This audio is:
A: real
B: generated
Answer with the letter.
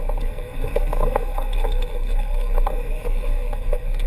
B